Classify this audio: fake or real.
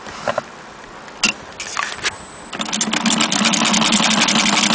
real